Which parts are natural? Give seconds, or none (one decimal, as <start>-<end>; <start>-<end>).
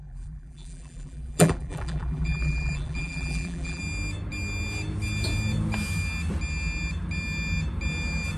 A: 3.8-8.4